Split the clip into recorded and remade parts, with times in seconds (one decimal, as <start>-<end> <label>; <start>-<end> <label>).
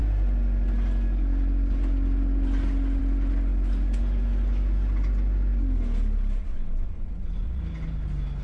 0.0-6.4 recorded; 6.4-7.6 remade; 7.6-8.4 recorded